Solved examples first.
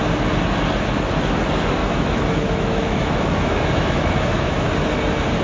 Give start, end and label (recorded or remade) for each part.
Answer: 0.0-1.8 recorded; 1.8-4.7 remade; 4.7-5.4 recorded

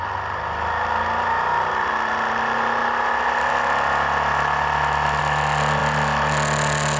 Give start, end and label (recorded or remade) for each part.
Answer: 0.0-7.0 recorded

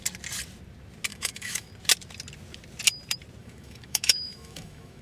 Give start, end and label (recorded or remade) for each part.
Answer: 0.0-1.1 recorded; 1.1-1.7 remade; 1.7-3.4 recorded; 3.4-5.0 remade

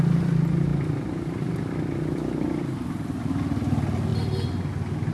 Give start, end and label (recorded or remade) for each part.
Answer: 0.0-5.1 recorded